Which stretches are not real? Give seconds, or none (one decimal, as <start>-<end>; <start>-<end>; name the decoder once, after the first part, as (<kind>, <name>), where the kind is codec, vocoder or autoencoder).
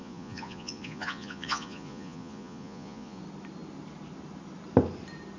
0.0-3.2 (vocoder, Vocos)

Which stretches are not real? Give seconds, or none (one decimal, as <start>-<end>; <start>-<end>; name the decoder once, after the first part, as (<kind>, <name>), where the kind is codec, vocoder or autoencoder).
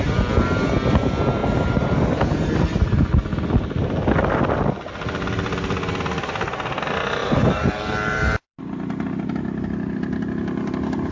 1.4-2.5 (vocoder, BigVGAN v2); 7.2-8.6